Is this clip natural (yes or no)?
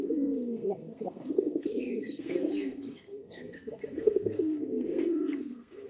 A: no